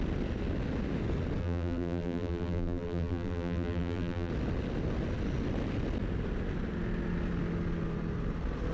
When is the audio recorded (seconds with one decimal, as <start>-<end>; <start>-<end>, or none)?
0.0-1.4; 4.3-8.7